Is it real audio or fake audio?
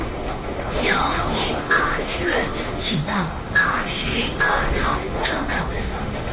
fake